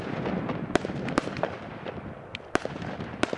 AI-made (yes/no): yes